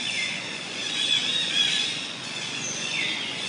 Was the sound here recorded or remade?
remade